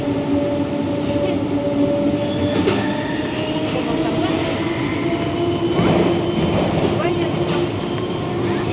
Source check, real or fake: real